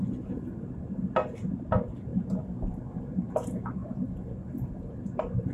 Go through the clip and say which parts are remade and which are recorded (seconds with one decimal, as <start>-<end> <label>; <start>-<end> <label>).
0.0-2.1 recorded; 2.1-3.3 remade; 3.3-5.5 recorded